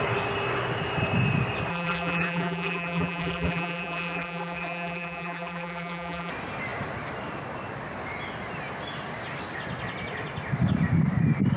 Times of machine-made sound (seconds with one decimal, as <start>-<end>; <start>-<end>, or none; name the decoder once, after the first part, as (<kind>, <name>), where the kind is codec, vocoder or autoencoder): 1.7-6.3 (vocoder, BigVGAN v2)